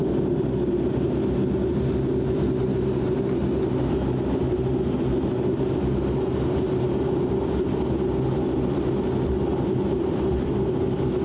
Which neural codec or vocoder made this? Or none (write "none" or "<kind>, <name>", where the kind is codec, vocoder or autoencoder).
none